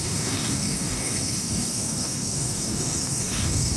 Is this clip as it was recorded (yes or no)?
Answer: no